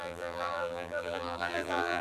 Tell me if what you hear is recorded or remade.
remade